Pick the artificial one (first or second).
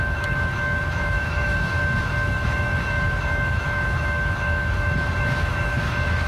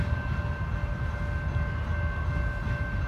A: first